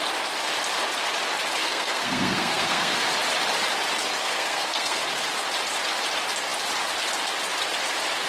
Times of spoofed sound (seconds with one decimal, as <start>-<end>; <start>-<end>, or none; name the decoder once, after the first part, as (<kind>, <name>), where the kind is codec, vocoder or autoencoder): 1.6-3.0 (codec, SNAC); 4.2-5.0